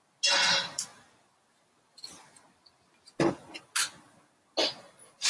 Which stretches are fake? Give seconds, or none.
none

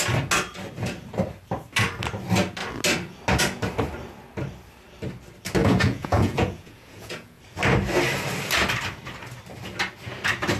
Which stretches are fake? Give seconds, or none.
5.6-7.4 (vocoder, Vocos)

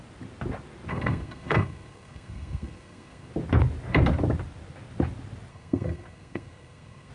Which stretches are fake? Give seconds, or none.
0.9-3.3 (codec, SNAC); 5.5-7.1

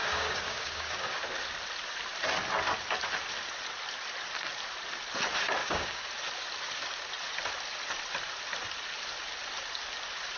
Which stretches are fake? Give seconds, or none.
0.0-1.2 (codec, DAC); 5.6-6.1

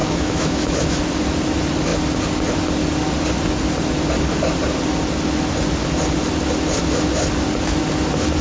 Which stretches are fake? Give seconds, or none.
0.0-1.0 (autoencoder, DAC-VAE)

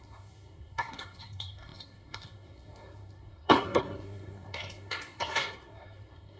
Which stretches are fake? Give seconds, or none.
0.0-6.4 (codec, SNAC)

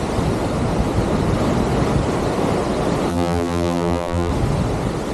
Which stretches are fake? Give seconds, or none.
3.1-4.3 (vocoder, BigVGAN v2)